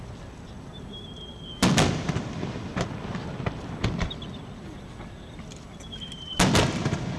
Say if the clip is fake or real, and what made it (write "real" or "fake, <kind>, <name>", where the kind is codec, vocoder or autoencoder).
real